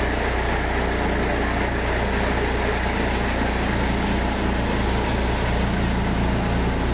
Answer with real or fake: real